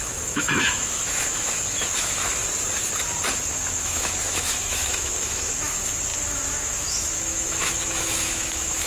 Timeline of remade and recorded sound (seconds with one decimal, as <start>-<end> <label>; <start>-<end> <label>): 0.0-2.4 remade; 2.4-3.5 recorded; 3.5-8.9 remade